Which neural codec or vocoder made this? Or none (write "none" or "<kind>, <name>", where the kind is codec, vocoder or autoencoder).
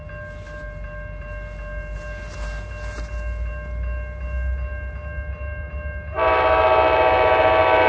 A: none